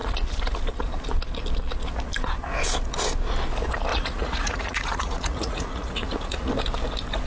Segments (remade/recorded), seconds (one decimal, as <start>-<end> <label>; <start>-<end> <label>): 0.0-3.9 recorded; 3.9-6.5 remade; 6.5-7.3 recorded